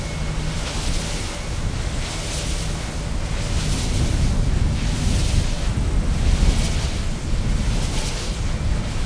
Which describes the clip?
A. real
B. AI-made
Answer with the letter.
A